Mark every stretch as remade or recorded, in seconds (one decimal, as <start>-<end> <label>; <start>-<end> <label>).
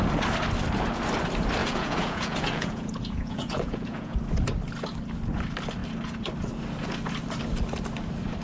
0.0-1.6 recorded; 1.6-4.1 remade; 4.1-8.4 recorded